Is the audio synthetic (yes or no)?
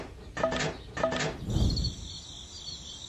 no